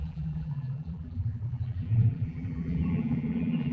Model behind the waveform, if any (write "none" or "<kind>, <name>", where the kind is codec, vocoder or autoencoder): vocoder, BigVGAN v2